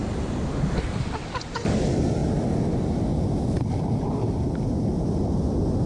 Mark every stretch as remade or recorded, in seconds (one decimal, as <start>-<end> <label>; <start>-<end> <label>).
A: 0.0-1.3 recorded; 1.3-2.2 remade; 2.2-5.1 recorded; 5.1-5.9 remade